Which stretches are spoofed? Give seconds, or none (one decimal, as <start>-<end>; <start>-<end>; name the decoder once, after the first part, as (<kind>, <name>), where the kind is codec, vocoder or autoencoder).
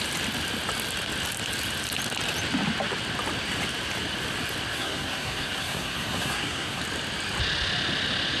4.7-6.8 (codec, SNAC)